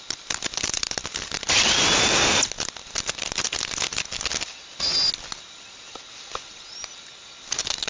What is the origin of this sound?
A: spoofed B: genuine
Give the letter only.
B